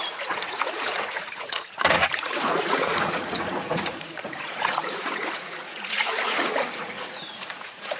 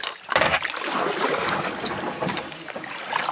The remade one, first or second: first